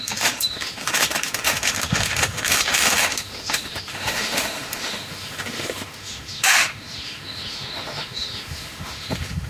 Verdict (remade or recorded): remade